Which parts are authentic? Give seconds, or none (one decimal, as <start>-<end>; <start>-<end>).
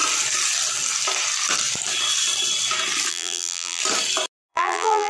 0.0-3.1; 3.8-4.5